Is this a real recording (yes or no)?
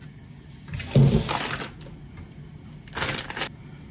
yes